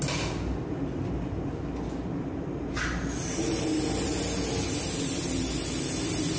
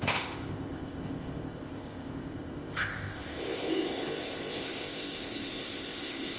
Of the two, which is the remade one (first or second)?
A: second